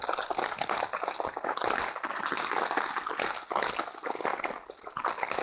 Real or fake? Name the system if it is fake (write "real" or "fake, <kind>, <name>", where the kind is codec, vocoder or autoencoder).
real